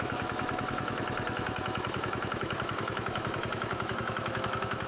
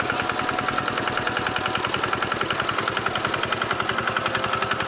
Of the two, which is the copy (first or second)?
first